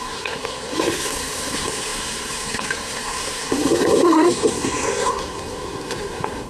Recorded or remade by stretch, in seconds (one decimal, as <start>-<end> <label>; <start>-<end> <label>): 0.0-6.5 remade